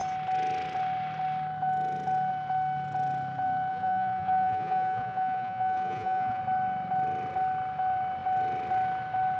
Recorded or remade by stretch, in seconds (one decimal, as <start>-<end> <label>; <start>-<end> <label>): 0.0-3.7 recorded; 3.7-6.4 remade; 6.4-9.4 recorded